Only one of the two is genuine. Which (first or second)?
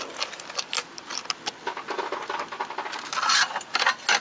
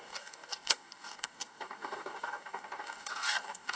first